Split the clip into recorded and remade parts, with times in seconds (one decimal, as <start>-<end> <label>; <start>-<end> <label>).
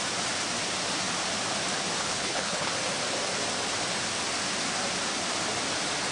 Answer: 0.0-2.0 recorded; 2.0-2.7 remade; 2.7-6.1 recorded